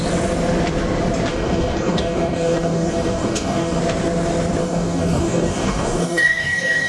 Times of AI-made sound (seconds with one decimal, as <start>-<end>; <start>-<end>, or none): 1.3-3.8; 4.6-6.9